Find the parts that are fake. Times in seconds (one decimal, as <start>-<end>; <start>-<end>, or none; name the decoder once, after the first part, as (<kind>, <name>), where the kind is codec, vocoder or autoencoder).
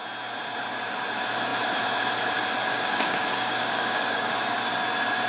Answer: 2.7-4.3 (codec, DAC)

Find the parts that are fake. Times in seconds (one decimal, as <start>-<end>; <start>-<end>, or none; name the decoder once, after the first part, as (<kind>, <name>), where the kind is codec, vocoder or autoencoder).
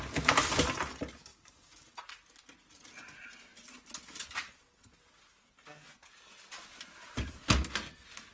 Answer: 1.3-2.0 (codec, DAC)